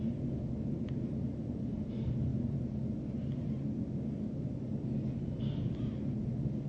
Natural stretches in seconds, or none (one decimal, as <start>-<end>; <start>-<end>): 0.0-6.7